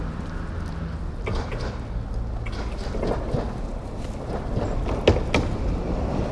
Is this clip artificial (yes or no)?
no